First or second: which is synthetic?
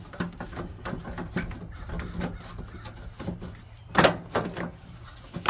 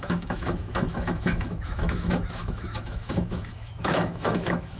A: second